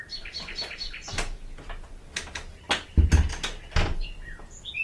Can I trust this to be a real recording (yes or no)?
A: yes